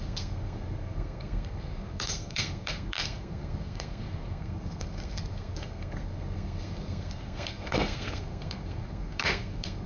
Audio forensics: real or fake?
fake